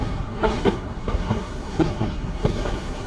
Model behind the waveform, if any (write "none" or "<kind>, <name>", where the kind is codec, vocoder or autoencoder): codec, SNAC